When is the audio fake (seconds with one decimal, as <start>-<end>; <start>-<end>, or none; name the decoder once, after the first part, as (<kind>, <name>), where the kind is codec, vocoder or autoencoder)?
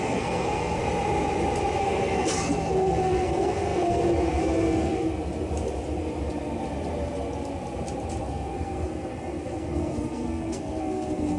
0.0-0.8 (codec, SNAC); 1.8-5.1; 8.2-11.4